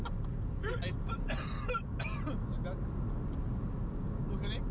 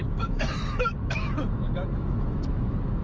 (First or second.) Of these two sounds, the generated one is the second